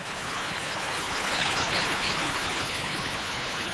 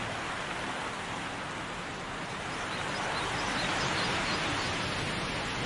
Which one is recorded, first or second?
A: second